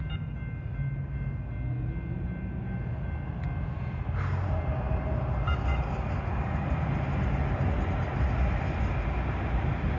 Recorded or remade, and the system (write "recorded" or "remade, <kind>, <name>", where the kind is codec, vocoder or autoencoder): recorded